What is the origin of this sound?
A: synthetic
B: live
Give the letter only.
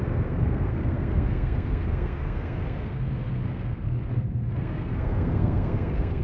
A